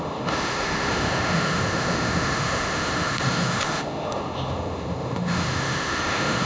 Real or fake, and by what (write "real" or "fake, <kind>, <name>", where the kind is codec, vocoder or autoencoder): fake, autoencoder, DAC-VAE